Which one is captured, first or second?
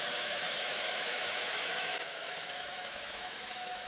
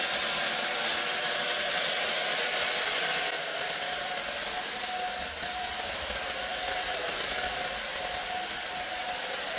second